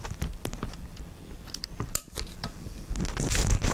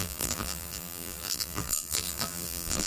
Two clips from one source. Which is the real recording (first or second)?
first